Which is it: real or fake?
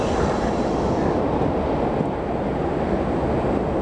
real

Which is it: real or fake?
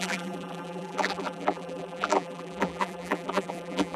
fake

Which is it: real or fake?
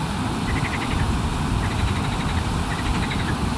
real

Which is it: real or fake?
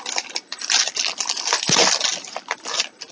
real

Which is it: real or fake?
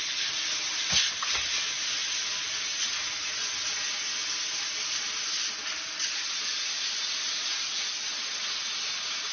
real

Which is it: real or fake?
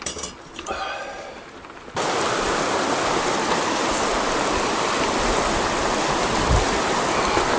real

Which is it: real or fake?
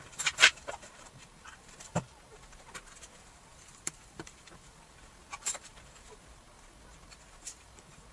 fake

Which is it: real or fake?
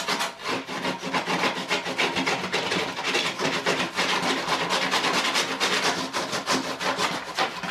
real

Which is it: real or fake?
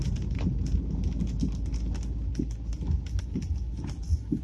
real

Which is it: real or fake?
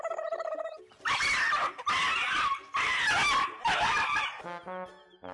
real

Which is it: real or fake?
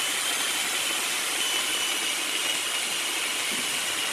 real